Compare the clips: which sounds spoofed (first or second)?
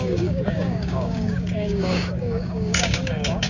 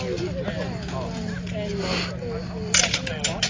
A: first